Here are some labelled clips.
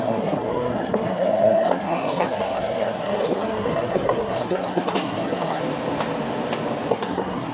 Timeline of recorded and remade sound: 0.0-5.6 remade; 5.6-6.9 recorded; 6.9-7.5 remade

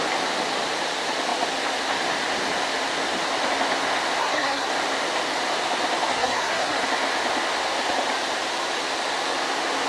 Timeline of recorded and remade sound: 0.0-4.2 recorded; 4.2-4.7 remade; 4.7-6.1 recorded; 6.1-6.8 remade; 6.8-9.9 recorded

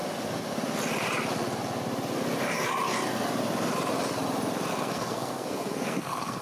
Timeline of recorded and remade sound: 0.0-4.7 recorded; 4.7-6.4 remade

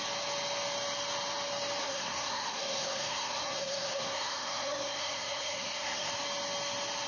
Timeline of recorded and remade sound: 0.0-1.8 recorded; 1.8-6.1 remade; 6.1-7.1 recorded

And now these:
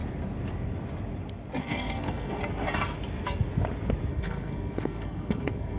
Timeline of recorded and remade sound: 0.0-1.6 recorded; 1.6-2.4 remade; 2.4-4.1 recorded; 4.1-5.8 remade

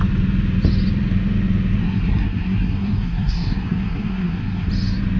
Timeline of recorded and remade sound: 0.0-1.8 recorded; 1.8-4.7 remade; 4.7-5.2 recorded

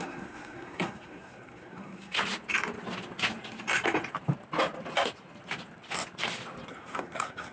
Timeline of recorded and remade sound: 0.0-2.2 remade; 2.2-6.7 recorded; 6.7-7.5 remade

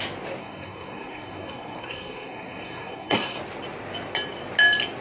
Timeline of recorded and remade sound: 0.0-0.4 recorded; 0.4-3.4 remade; 3.4-5.0 recorded